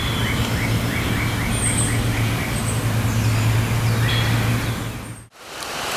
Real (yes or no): yes